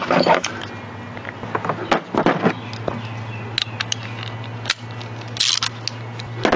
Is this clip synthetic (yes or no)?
no